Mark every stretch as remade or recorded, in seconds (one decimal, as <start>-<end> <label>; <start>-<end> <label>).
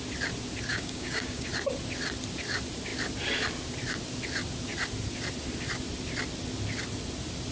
0.0-0.7 recorded; 0.7-1.5 remade; 1.5-7.5 recorded